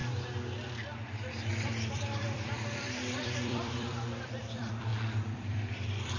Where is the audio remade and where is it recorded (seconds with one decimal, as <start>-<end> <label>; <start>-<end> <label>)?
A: 0.0-1.5 recorded; 1.5-6.2 remade